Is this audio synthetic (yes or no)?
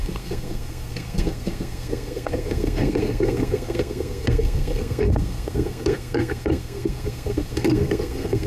yes